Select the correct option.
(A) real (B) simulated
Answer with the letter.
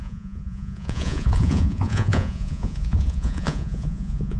B